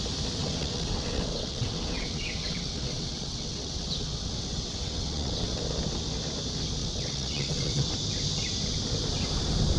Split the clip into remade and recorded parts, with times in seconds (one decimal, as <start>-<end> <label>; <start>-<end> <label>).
0.0-0.4 recorded; 0.4-5.6 remade; 5.6-6.8 recorded; 6.8-7.9 remade; 7.9-9.8 recorded